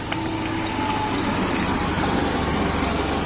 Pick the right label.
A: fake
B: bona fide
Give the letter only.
B